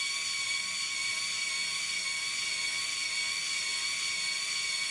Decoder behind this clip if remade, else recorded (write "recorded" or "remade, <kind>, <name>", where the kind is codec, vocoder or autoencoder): recorded